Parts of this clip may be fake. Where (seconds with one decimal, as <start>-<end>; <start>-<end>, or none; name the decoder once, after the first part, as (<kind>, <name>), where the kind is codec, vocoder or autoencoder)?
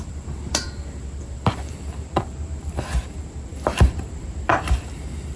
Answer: 0.0-5.4 (vocoder, BigVGAN v2)